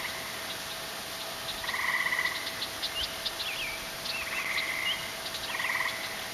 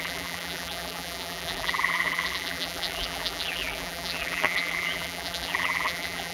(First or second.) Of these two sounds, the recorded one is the first